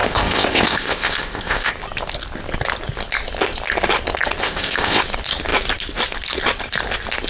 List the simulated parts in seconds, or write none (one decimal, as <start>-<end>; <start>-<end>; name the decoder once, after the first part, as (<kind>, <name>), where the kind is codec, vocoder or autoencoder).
0.0-1.7 (codec, ZipCodec); 4.4-5.0